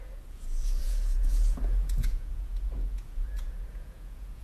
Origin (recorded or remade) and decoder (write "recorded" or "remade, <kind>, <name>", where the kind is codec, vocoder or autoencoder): remade, vocoder, Vocos